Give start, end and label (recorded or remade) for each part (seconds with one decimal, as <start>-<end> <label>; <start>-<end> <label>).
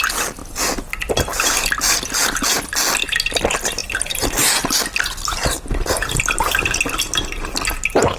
0.0-8.2 recorded